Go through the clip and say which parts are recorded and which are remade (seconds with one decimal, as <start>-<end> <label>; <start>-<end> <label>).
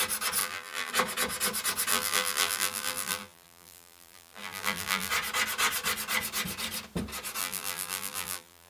0.0-0.4 recorded; 0.4-0.9 remade; 0.9-1.9 recorded; 1.9-5.1 remade; 5.1-7.4 recorded; 7.4-8.7 remade